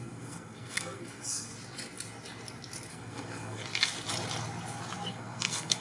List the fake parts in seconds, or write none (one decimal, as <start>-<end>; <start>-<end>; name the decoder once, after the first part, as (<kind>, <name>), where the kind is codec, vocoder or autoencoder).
0.0-1.5 (codec, SNAC); 2.9-3.6; 5.1-5.8